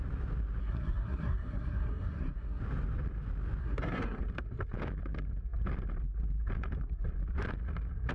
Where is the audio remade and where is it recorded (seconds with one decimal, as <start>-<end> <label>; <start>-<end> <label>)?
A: 0.0-0.6 recorded; 0.6-2.6 remade; 2.6-3.6 recorded; 3.6-4.2 remade; 4.2-8.1 recorded